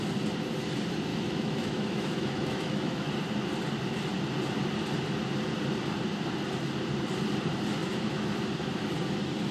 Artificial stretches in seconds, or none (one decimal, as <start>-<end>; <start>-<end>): 1.1-3.1; 7.8-8.3